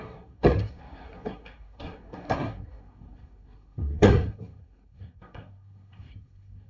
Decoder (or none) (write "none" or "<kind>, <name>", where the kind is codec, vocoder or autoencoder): codec, SNAC